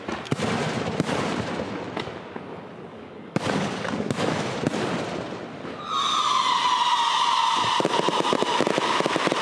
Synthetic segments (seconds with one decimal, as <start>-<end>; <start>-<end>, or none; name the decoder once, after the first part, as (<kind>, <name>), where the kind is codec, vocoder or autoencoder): 2.9-4.6 (codec, DAC)